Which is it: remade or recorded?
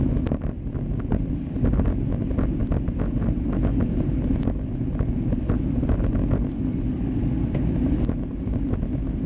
recorded